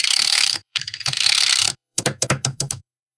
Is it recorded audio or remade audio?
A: remade